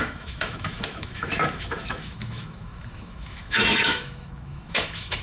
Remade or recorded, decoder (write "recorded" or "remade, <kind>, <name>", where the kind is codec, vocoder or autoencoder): remade, autoencoder, DAC-VAE